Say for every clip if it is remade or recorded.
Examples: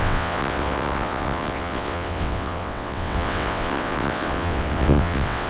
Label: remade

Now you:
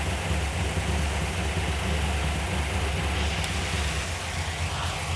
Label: recorded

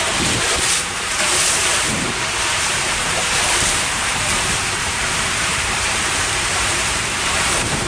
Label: remade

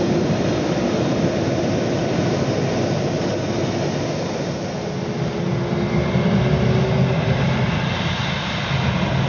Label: recorded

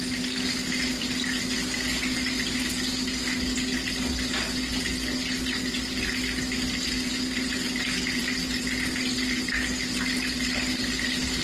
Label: recorded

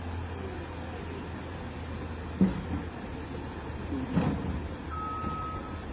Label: recorded